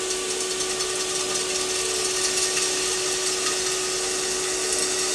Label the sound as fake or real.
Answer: real